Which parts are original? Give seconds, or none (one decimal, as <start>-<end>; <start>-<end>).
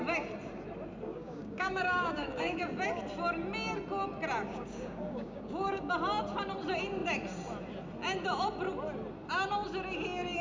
0.0-1.1; 2.6-4.5; 5.9-10.4